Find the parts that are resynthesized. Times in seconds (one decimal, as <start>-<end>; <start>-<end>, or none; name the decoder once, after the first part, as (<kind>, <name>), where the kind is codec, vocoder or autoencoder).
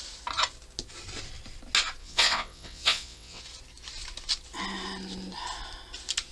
2.0-3.4 (vocoder, WaveNeXt)